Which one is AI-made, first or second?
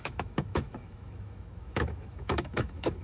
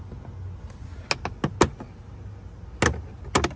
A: first